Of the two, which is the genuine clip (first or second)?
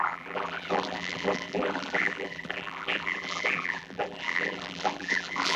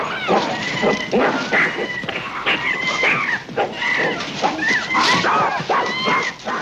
second